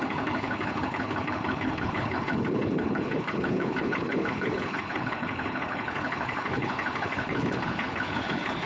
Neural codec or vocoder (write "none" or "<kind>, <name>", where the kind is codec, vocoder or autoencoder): codec, HILCodec